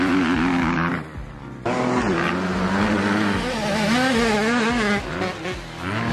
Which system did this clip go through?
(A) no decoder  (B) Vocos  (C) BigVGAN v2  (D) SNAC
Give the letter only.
A